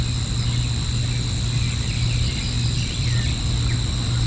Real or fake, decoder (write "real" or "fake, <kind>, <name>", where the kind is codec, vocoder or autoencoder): real